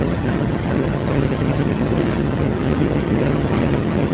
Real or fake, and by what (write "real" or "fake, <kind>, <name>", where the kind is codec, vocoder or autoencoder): fake, vocoder, HiFi-GAN